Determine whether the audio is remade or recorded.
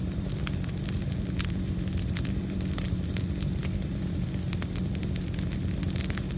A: recorded